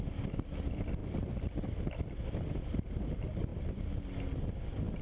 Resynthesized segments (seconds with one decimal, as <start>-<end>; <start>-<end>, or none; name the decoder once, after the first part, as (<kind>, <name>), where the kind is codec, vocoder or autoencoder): 0.0-3.5 (vocoder, BigVGAN v2)